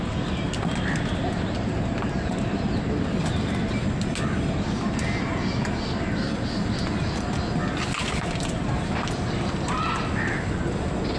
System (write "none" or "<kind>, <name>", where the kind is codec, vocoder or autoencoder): none